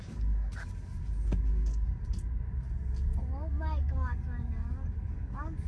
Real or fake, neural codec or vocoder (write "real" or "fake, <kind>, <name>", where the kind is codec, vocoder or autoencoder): fake, codec, DAC